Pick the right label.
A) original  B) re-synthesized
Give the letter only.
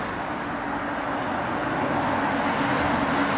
A